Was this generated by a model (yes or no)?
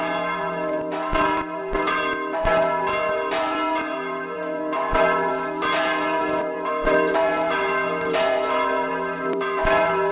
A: yes